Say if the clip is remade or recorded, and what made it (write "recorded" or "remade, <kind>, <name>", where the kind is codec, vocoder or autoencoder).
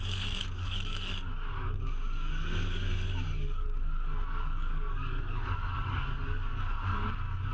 remade, codec, DAC